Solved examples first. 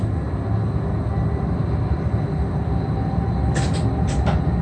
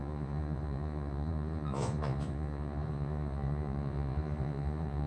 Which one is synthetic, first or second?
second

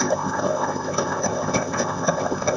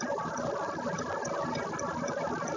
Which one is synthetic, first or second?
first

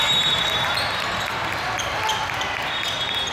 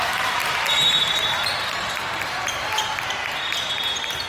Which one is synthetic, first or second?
second